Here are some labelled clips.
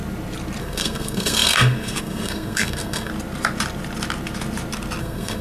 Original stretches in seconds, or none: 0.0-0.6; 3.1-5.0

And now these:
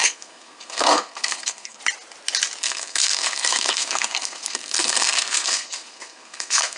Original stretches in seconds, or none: 1.8-2.6

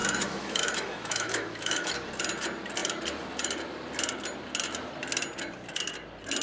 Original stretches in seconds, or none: 1.9-6.4

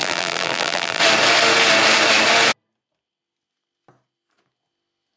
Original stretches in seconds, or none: 1.0-5.2

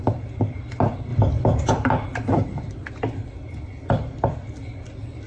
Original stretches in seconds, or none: 0.0-5.3